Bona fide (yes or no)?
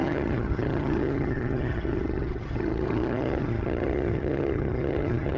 no